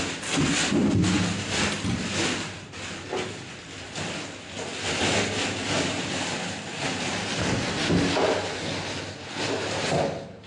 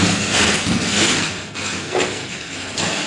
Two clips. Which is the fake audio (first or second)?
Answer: second